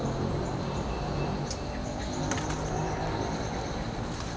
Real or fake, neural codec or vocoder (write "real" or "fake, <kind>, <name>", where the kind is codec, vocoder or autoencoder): real